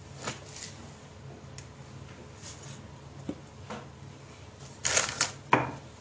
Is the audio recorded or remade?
recorded